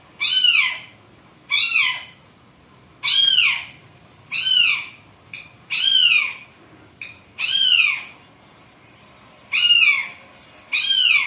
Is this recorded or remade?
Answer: recorded